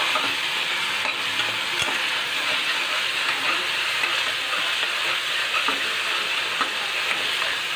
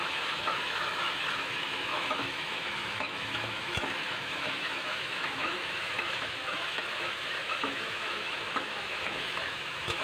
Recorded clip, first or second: first